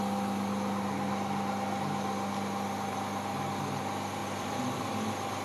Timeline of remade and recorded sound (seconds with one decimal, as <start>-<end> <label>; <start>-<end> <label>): 0.0-4.2 recorded; 4.2-4.8 remade; 4.8-5.4 recorded